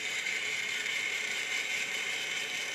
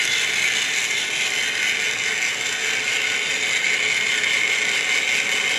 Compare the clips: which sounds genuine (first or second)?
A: second